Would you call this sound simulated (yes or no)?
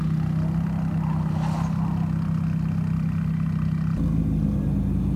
no